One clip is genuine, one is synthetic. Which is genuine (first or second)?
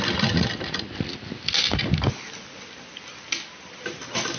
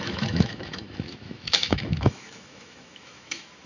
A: first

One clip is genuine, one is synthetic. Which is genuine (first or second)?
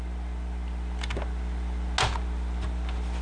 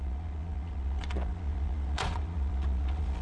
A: first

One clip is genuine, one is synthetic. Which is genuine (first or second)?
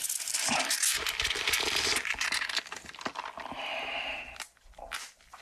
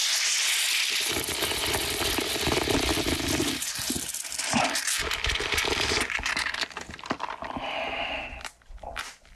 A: first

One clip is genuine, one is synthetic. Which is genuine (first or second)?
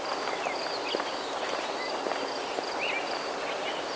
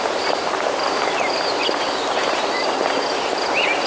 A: first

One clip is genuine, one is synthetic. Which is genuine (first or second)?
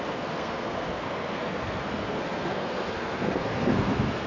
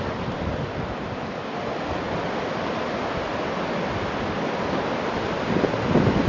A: second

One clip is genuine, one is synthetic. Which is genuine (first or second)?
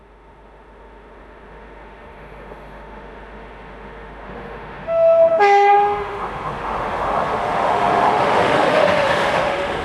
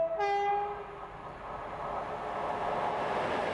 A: second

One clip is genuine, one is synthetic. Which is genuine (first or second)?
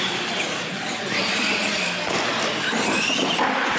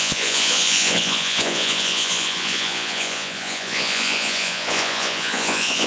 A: first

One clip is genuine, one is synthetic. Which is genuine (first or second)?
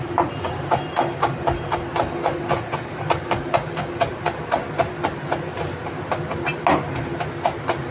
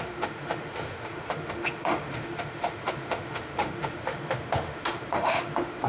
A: first